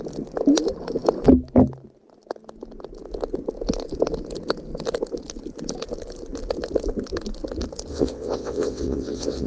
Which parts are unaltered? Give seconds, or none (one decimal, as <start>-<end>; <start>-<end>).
0.0-7.9